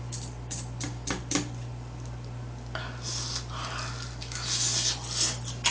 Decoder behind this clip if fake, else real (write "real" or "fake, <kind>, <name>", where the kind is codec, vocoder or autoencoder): real